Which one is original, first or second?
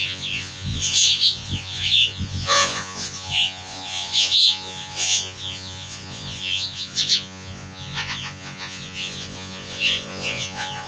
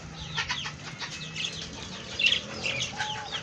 second